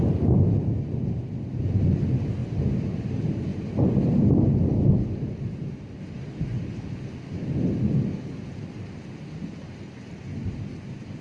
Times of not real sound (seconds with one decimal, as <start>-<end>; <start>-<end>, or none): none